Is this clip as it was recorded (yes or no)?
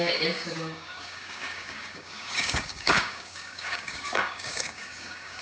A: no